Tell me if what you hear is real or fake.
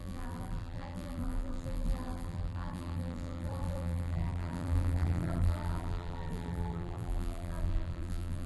fake